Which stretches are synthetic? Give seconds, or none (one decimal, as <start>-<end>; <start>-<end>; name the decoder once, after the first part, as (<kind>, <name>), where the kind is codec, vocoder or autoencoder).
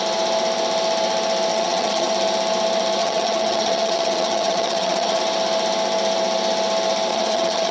1.5-2.1 (vocoder, HiFi-GAN); 3.0-5.2; 7.1-7.7